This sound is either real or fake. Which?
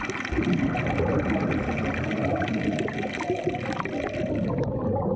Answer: real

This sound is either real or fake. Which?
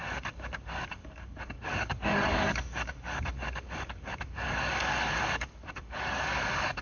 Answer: fake